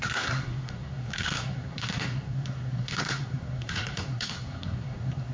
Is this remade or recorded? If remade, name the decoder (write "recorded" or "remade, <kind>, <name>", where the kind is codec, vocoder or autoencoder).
remade, codec, SNAC